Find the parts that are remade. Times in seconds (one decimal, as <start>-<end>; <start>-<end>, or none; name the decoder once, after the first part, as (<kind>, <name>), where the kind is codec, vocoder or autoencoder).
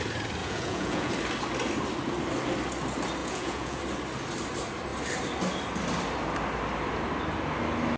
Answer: 0.4-1.1 (vocoder, Vocos); 3.2-3.8